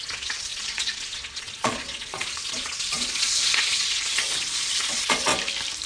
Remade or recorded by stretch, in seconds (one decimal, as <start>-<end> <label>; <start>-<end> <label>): 0.0-5.3 remade; 5.3-5.9 recorded